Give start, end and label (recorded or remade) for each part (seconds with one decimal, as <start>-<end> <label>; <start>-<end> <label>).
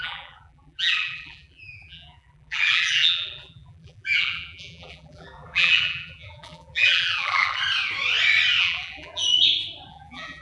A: 0.0-7.6 remade; 7.6-8.6 recorded; 8.6-9.2 remade; 9.2-9.9 recorded; 9.9-10.4 remade